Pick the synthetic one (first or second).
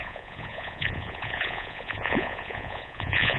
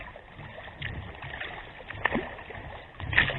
first